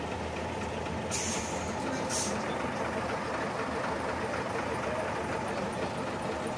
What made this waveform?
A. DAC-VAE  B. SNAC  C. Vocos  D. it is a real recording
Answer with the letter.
D